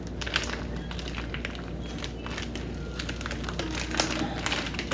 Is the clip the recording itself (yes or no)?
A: yes